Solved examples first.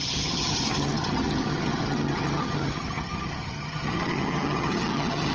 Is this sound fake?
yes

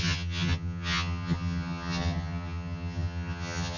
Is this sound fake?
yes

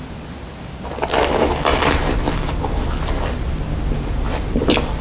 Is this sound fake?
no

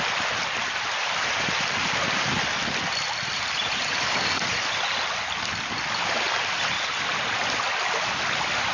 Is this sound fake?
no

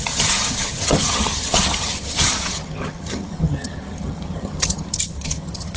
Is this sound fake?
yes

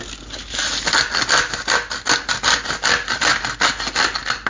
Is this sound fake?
no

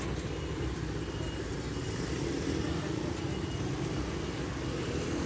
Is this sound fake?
no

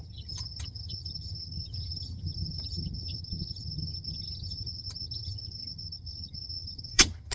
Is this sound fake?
yes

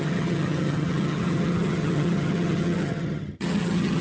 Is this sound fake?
yes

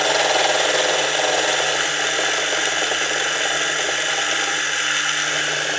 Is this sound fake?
no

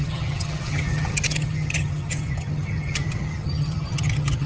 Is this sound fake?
yes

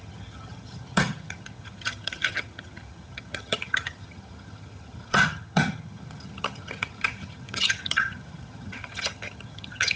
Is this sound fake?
yes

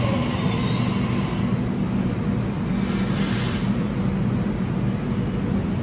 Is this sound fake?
no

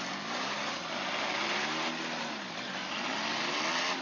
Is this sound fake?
no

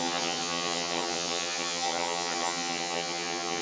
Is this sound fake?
yes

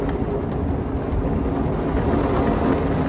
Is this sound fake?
no